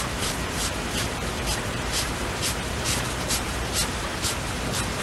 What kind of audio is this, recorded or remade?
remade